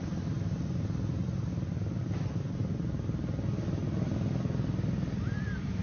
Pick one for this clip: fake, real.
real